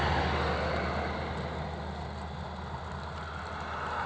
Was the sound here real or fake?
real